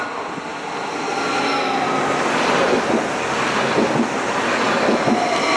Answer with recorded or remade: recorded